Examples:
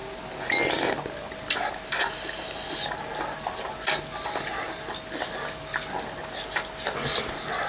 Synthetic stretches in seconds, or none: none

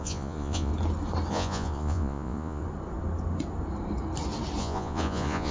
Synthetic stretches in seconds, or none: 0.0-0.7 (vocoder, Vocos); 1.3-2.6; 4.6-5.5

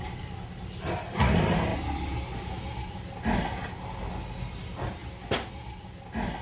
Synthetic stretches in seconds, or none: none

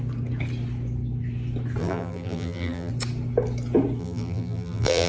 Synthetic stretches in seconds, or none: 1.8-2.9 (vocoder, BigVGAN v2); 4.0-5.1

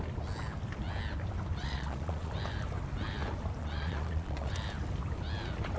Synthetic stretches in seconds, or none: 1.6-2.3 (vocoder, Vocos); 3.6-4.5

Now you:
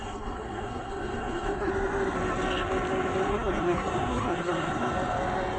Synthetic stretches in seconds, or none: 0.0-1.7 (codec, SNAC); 3.2-4.9

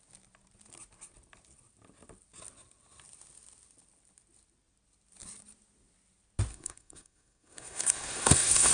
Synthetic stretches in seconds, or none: 6.5-8.7 (codec, SNAC)